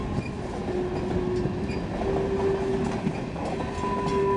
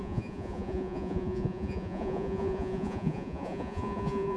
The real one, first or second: first